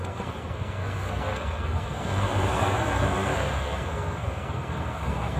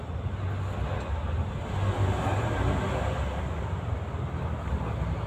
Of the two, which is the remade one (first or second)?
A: first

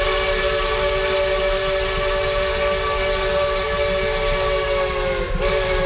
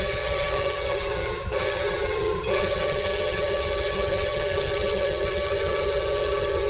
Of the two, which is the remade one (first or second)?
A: second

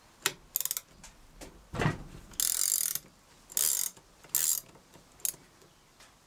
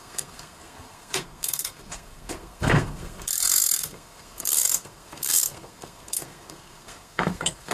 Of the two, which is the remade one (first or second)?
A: second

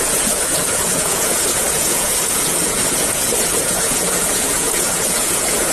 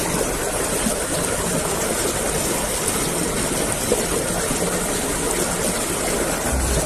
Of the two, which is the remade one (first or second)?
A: first